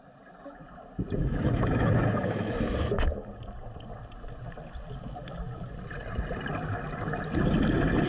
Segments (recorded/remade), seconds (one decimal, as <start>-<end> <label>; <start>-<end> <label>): 0.0-1.2 recorded; 1.2-2.5 remade; 2.5-8.1 recorded